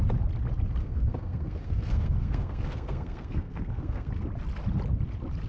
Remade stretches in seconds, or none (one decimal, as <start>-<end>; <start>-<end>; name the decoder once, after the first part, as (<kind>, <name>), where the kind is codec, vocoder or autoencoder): 0.8-4.1 (codec, SNAC)